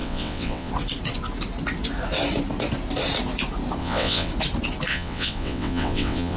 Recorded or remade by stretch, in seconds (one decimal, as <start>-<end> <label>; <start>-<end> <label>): 0.0-0.7 remade; 0.7-3.8 recorded; 3.8-4.3 remade; 4.3-4.9 recorded; 4.9-6.4 remade